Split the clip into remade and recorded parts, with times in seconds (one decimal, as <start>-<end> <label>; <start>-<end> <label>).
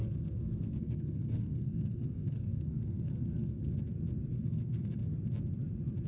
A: 0.0-3.7 remade; 3.7-4.3 recorded; 4.3-5.0 remade; 5.0-6.1 recorded